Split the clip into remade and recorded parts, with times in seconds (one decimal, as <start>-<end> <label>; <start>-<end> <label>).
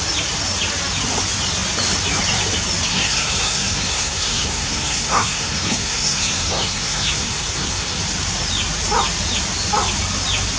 0.0-2.9 recorded; 2.9-8.0 remade; 8.0-10.6 recorded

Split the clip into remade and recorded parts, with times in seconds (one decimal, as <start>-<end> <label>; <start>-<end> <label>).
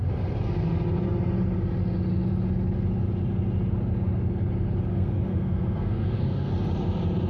0.0-4.9 recorded; 4.9-6.5 remade; 6.5-7.3 recorded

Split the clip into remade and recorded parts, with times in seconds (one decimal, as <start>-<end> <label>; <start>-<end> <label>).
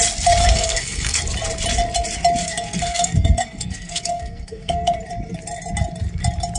0.0-0.4 recorded; 0.4-1.2 remade; 1.2-2.4 recorded; 2.4-5.0 remade; 5.0-6.6 recorded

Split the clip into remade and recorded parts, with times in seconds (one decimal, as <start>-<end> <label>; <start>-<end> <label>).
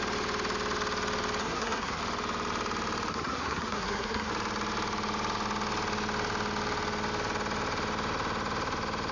0.0-1.4 recorded; 1.4-2.0 remade; 2.0-3.1 recorded; 3.1-4.3 remade; 4.3-9.1 recorded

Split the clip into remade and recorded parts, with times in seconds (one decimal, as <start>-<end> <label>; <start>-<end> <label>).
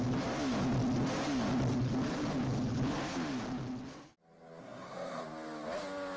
0.0-4.6 recorded; 4.6-5.2 remade; 5.2-6.2 recorded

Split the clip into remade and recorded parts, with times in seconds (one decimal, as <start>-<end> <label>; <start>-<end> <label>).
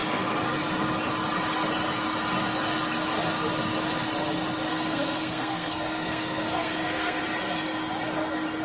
0.0-4.7 recorded; 4.7-7.2 remade; 7.2-8.6 recorded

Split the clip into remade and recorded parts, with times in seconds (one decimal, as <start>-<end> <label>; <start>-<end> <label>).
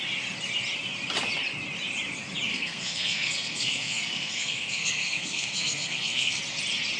0.0-2.5 recorded; 2.5-6.4 remade; 6.4-7.0 recorded